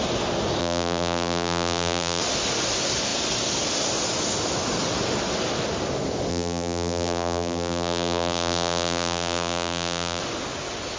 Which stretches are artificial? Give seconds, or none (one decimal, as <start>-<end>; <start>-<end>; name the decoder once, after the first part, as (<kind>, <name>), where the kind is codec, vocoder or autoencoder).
0.6-2.2 (vocoder, BigVGAN v2); 6.3-10.2